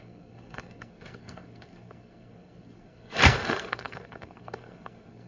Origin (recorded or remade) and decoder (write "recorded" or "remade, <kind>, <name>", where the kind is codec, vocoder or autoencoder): remade, codec, SNAC